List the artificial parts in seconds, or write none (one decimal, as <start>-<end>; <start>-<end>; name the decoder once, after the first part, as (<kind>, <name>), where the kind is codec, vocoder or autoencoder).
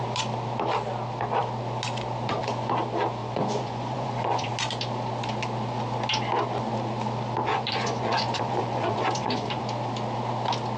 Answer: 3.2-4.5 (vocoder, Vocos); 7.5-9.6